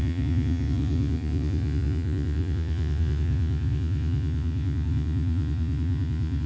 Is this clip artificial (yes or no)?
yes